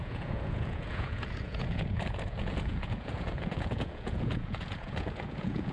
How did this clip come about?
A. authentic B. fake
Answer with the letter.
B